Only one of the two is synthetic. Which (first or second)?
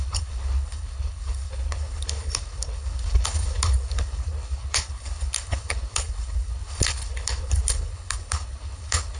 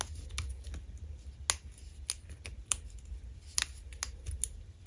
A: first